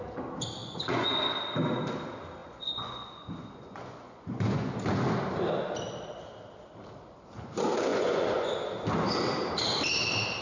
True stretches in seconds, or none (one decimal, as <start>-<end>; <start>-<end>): 0.0-0.6; 1.2-2.4; 4.7-7.9; 8.5-10.4